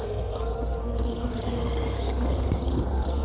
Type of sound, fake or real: fake